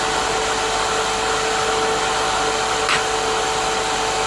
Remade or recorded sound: recorded